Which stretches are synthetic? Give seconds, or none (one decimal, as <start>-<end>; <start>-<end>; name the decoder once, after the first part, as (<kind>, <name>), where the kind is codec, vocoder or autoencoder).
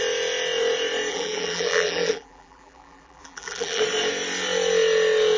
1.1-3.8 (vocoder, BigVGAN v2)